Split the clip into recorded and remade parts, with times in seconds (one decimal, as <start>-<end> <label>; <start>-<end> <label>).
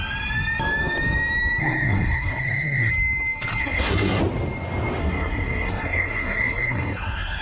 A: 0.0-1.6 recorded; 1.6-2.9 remade; 2.9-3.6 recorded; 3.6-4.2 remade; 4.2-5.0 recorded; 5.0-7.4 remade